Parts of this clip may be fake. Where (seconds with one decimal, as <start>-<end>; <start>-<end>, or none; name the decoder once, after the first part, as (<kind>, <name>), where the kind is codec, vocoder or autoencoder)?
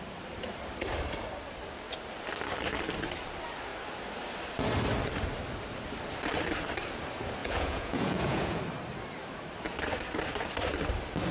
7.4-8.6 (vocoder, Vocos)